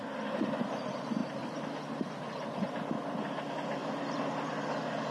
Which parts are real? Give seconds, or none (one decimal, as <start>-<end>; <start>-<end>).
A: 0.0-5.1